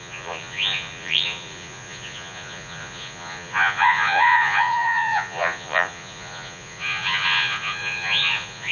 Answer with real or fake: fake